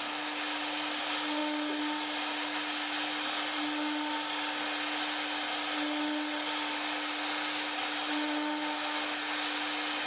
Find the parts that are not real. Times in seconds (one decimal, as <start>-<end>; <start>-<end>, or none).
none